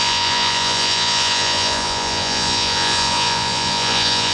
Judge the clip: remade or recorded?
remade